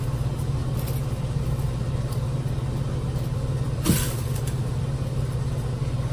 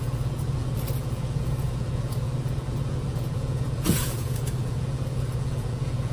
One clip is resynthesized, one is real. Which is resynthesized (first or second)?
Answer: second